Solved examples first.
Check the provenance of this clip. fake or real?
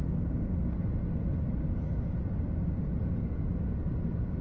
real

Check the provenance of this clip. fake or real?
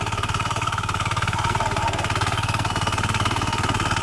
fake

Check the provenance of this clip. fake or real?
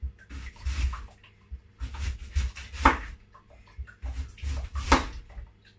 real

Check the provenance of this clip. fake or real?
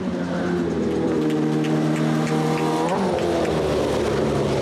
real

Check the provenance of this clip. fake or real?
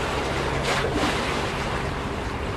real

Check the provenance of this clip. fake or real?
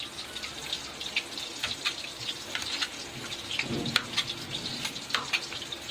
real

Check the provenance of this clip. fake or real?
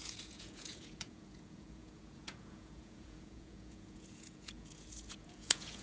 fake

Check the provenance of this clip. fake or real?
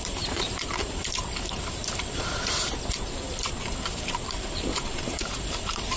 fake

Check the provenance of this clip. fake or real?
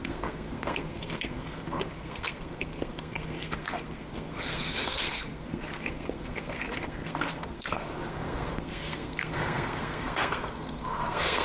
fake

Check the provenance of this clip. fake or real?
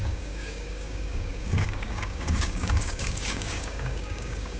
fake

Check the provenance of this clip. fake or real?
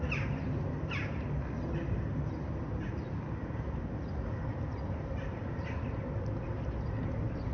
real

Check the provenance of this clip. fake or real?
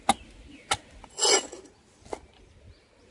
real